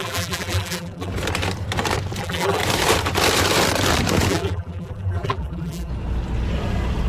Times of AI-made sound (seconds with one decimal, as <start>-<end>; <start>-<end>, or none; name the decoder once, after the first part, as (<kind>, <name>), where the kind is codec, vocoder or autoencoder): 0.0-1.1 (vocoder, BigVGAN v2); 2.2-2.6; 4.3-5.9

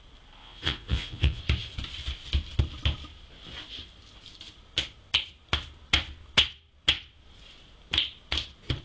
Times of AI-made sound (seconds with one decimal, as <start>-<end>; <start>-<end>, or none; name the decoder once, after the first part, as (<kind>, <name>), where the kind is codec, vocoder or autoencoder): 0.4-1.4 (vocoder, Vocos)

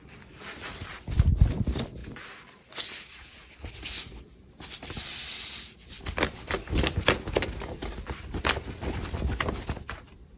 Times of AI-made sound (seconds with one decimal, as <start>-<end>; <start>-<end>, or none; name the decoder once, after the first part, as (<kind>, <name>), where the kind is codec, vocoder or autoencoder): none